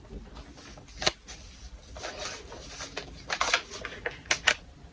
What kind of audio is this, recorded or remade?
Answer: recorded